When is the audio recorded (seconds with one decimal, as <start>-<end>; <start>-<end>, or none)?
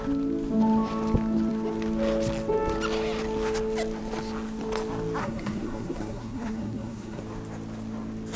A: 0.0-5.2; 7.2-8.4